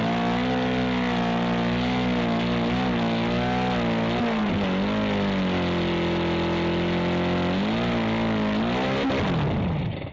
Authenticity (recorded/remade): recorded